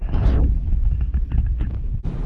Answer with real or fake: real